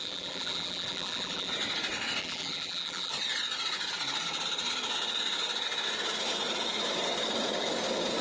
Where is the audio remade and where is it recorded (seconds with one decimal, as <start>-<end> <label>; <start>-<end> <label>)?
0.0-1.5 remade; 1.5-2.2 recorded; 2.2-3.1 remade; 3.1-8.2 recorded